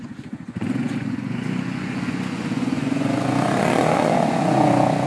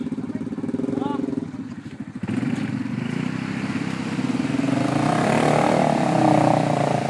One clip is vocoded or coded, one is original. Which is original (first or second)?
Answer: second